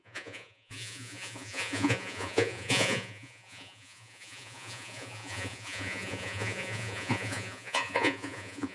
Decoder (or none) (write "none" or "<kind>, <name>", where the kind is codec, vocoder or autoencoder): vocoder, Vocos